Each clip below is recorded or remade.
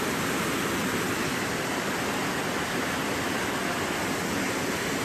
recorded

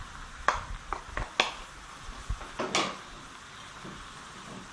recorded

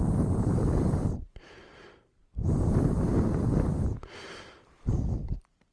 remade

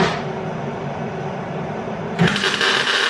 recorded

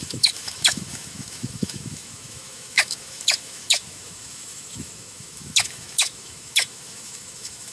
remade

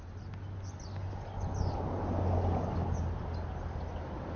recorded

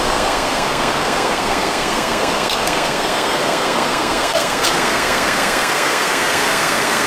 remade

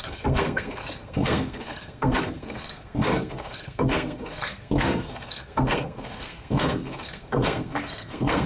remade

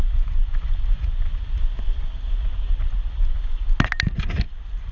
recorded